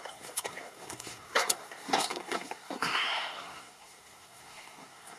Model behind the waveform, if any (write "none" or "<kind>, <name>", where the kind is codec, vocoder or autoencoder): codec, SNAC